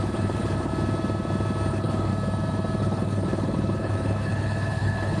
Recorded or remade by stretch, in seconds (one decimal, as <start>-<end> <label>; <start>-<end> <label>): 0.0-0.7 remade; 0.7-1.7 recorded; 1.7-2.1 remade; 2.1-2.8 recorded; 2.8-5.2 remade